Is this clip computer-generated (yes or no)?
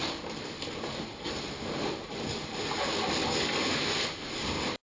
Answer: no